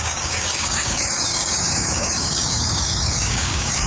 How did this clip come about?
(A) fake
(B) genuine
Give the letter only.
A